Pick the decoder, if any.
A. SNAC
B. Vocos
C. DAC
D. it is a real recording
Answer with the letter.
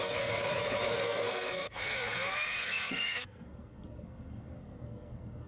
A